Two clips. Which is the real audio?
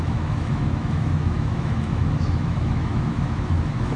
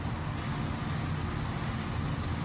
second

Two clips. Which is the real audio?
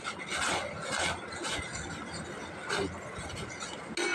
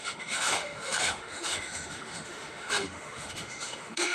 first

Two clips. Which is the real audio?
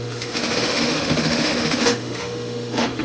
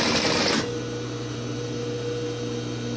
second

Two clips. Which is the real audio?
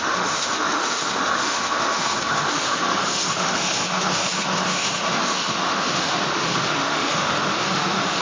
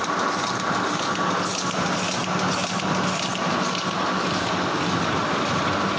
second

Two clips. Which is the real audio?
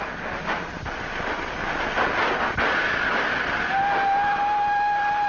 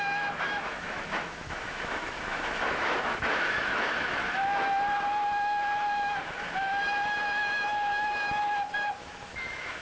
first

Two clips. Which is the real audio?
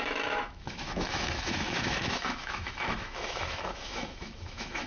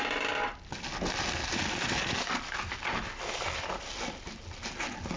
second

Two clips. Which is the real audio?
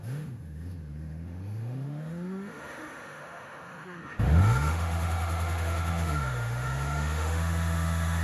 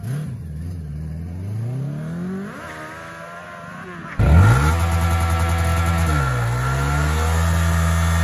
second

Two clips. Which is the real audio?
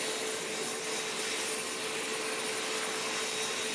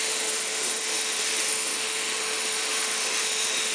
first